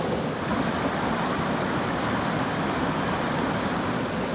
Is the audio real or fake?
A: fake